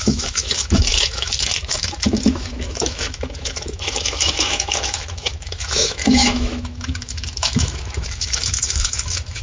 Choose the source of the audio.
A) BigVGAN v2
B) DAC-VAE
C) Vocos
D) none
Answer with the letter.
B